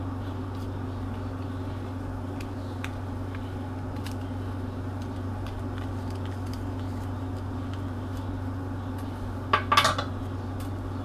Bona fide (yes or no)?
yes